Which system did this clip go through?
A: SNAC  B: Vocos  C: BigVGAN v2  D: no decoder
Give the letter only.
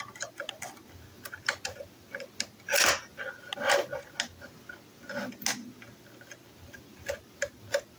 D